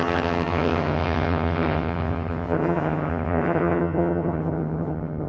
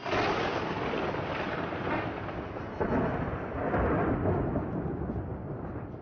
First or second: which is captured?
second